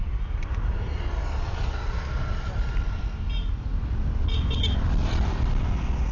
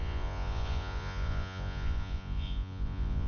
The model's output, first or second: second